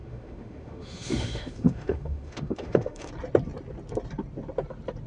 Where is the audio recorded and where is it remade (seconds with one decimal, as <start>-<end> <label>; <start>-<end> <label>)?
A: 0.0-3.1 remade; 3.1-5.1 recorded